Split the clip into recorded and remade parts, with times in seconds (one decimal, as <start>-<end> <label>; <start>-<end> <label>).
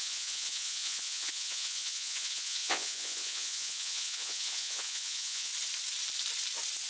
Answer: 0.0-5.5 remade; 5.5-6.9 recorded